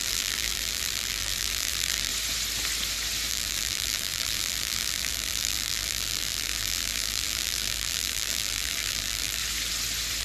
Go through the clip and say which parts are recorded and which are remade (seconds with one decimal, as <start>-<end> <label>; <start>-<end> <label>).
0.0-2.1 remade; 2.1-3.3 recorded; 3.3-9.4 remade; 9.4-10.2 recorded